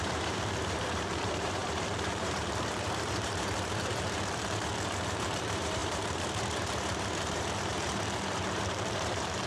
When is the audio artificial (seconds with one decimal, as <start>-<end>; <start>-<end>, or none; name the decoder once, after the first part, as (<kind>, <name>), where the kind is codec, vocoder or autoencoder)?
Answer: 0.0-9.5 (vocoder, BigVGAN v2)